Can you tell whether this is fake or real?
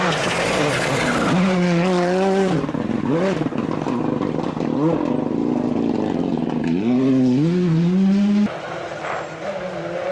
real